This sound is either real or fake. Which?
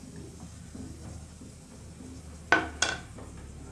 real